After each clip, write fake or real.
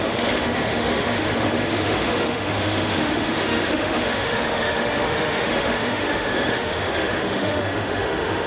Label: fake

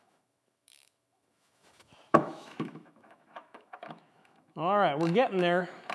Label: fake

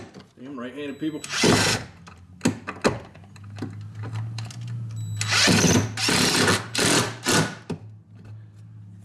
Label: real